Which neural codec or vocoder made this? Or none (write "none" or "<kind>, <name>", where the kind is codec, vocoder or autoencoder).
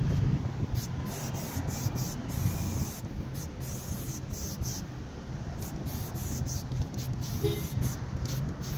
none